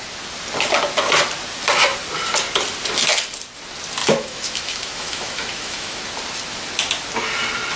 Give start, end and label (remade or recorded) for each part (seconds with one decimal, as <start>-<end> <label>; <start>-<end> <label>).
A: 0.0-4.0 recorded; 4.0-6.0 remade; 6.0-7.8 recorded